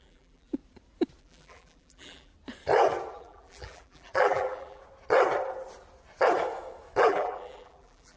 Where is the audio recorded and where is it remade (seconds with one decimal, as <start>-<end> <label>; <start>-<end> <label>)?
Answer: 0.0-0.6 remade; 0.6-1.2 recorded; 1.2-2.3 remade; 2.3-3.1 recorded; 3.1-4.8 remade; 4.8-7.0 recorded; 7.0-8.2 remade